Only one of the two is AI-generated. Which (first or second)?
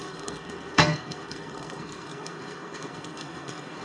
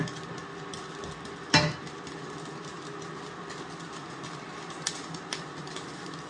first